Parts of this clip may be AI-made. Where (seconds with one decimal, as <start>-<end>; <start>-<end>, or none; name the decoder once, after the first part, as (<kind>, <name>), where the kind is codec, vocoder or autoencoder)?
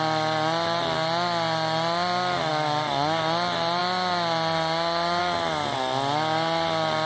none